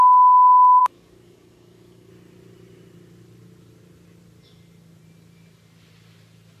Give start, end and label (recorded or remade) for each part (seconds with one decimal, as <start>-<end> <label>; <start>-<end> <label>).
0.0-0.8 recorded; 0.8-2.1 remade; 2.1-6.6 recorded